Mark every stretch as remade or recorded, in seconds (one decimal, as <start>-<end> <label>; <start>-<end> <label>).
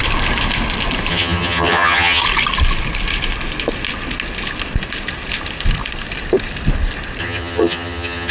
0.0-1.1 recorded; 1.1-2.2 remade; 2.2-7.2 recorded; 7.2-8.3 remade